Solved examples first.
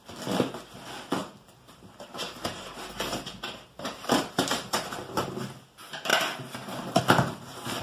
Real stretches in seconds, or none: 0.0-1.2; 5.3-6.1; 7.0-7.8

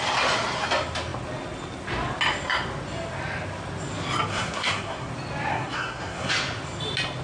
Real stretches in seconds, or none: 0.0-4.3; 5.1-5.5; 6.3-7.2

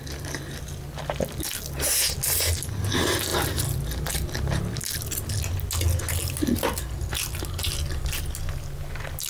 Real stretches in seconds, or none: 0.0-9.3

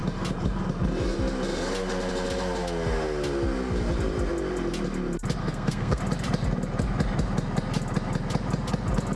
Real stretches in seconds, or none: 0.0-5.4; 6.0-9.2

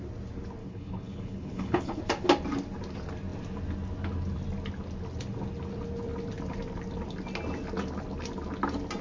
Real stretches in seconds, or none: 0.0-0.6; 2.0-9.0

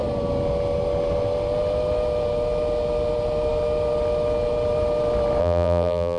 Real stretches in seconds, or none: 0.0-5.4